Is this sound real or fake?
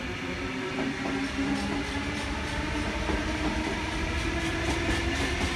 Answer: real